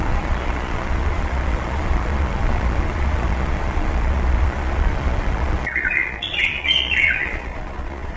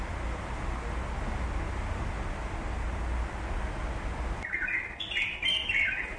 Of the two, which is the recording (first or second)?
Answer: second